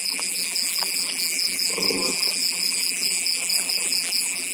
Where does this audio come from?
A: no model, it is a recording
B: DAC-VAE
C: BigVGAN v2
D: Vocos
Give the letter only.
C